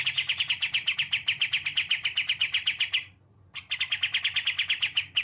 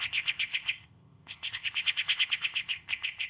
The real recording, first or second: first